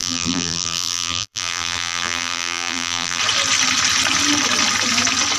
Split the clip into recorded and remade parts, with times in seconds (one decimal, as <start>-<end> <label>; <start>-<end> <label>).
0.0-3.2 remade; 3.2-5.4 recorded